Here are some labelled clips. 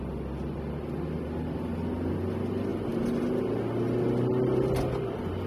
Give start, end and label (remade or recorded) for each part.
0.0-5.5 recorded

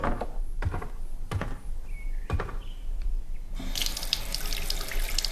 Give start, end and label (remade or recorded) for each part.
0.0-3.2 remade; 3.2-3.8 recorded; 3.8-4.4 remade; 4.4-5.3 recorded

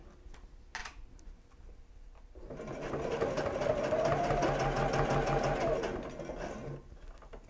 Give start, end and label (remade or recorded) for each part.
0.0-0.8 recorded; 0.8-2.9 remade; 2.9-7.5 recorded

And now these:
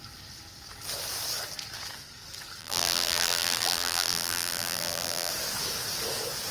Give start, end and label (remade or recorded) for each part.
0.0-2.6 recorded; 2.6-5.3 remade; 5.3-6.5 recorded